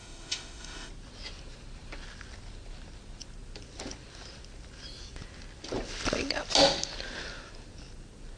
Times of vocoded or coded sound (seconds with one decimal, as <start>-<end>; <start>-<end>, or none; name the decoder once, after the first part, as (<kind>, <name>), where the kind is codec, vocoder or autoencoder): 0.0-0.9 (autoencoder, DAC-VAE)